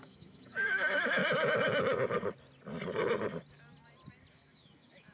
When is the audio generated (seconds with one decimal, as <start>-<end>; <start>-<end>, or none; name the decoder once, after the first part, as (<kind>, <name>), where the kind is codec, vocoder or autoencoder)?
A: 0.0-1.2 (autoencoder, DAC-VAE); 4.3-5.1